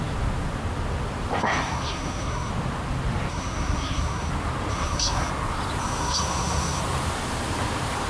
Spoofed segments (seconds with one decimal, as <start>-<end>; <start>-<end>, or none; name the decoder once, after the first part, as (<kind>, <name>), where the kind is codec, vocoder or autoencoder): 1.4-2.5 (codec, SNAC); 3.3-4.3; 4.7-5.3; 5.8-6.8